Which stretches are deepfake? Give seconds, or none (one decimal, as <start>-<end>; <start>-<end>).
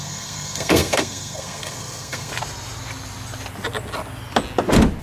0.0-2.3